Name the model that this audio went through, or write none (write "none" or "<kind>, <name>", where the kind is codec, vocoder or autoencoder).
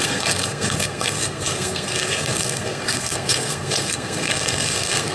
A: codec, SNAC